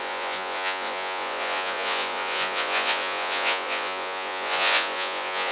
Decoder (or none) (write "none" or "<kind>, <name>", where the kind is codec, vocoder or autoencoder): vocoder, Vocos